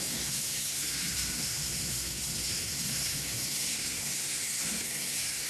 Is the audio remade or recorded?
remade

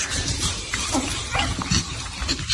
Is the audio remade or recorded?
recorded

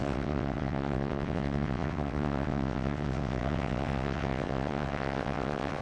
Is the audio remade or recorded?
remade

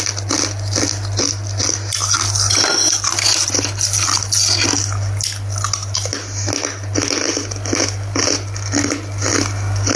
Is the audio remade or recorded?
recorded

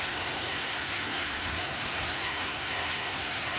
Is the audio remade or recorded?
remade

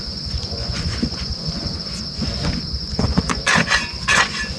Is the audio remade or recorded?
remade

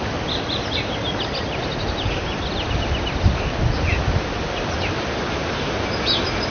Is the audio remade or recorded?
recorded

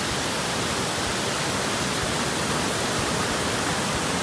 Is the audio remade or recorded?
recorded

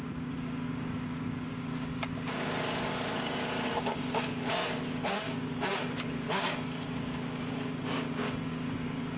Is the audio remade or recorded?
remade